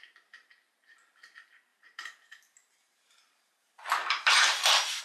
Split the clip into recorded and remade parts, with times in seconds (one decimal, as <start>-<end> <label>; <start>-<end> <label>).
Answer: 0.0-1.7 recorded; 1.7-5.0 remade